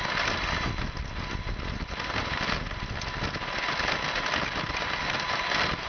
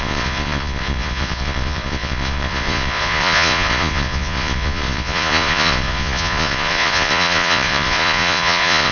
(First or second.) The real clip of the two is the first